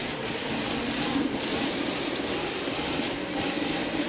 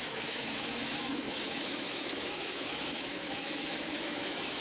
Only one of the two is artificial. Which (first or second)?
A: second